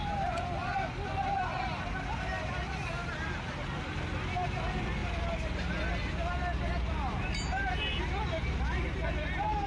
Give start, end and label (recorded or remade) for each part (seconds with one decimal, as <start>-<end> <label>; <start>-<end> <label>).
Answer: 0.0-9.7 recorded